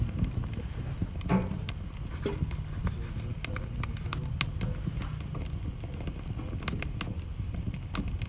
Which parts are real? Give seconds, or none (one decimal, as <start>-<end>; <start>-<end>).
0.0-8.3